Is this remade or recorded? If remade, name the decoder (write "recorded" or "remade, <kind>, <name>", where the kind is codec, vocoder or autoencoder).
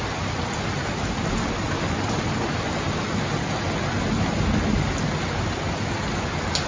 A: recorded